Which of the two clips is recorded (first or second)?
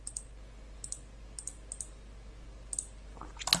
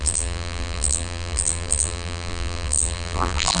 first